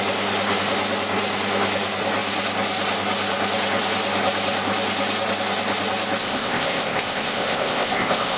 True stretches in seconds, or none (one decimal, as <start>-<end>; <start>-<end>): 0.0-6.2